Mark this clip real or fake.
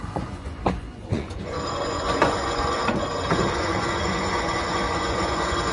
fake